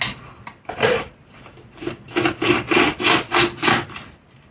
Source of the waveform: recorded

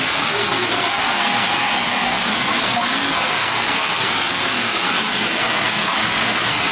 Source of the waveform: remade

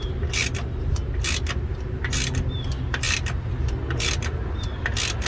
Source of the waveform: recorded